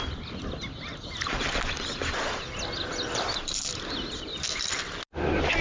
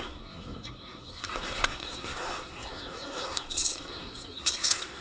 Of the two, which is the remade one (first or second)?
second